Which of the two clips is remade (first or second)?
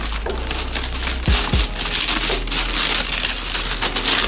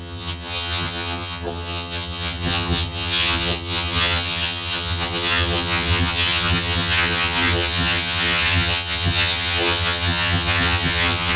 second